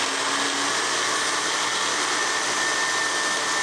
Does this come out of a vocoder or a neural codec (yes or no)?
no